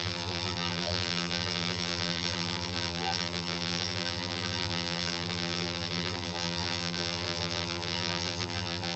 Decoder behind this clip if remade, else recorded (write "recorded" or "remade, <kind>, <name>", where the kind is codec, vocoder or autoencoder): remade, vocoder, BigVGAN v2